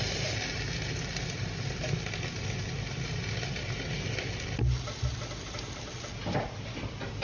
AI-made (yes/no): no